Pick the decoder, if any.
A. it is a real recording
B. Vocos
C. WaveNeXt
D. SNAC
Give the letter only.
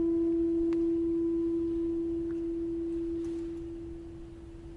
A